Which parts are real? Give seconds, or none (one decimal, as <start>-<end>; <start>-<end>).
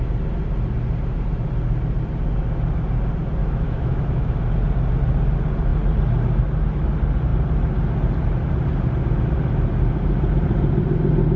0.0-3.4; 4.4-11.4